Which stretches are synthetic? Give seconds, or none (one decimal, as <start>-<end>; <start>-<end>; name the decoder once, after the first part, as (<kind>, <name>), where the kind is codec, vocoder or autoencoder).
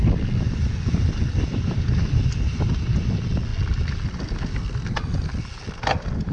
1.5-2.2 (vocoder, BigVGAN v2)